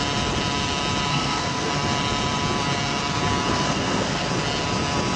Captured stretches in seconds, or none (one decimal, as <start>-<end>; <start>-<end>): 0.0-1.1; 1.7-3.5; 4.3-5.2